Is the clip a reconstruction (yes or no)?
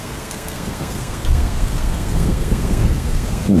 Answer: yes